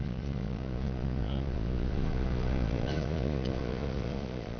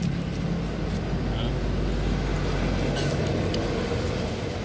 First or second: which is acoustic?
second